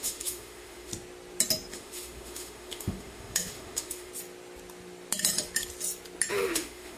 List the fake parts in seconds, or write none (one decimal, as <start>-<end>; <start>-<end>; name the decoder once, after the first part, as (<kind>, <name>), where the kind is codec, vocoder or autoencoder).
0.0-0.9 (autoencoder, DAC-VAE); 1.7-4.1; 6.3-7.0